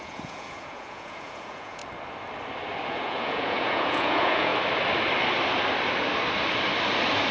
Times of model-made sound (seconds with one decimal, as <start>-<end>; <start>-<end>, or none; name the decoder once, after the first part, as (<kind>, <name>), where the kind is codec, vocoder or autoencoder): 0.0-1.8 (vocoder, Vocos); 2.8-4.5